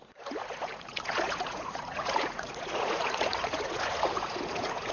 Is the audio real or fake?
fake